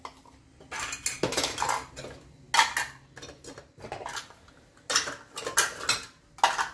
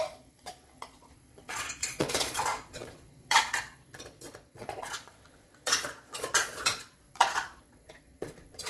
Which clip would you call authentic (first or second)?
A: first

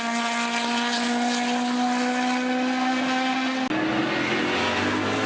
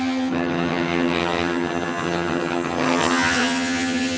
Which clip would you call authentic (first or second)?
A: first